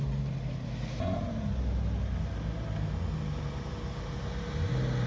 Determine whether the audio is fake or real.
real